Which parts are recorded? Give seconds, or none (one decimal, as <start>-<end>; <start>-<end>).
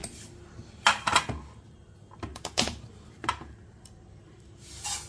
0.0-2.3; 4.5-5.1